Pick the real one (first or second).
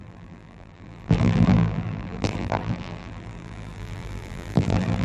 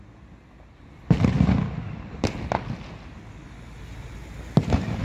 second